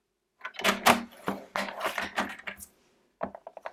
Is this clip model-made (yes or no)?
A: no